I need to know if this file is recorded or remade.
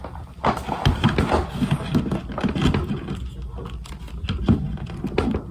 recorded